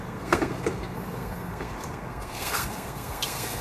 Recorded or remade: remade